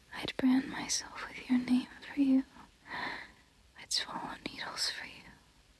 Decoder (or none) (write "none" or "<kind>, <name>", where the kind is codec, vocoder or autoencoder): none